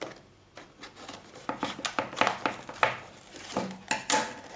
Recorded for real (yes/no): yes